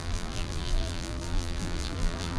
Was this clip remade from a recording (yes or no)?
yes